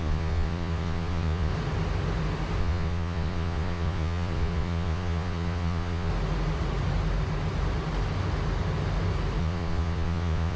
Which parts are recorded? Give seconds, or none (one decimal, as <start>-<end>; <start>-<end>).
1.5-2.6; 6.1-9.4